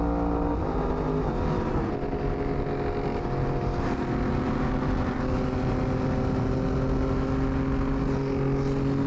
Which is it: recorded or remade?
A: recorded